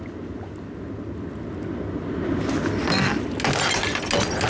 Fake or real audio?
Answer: real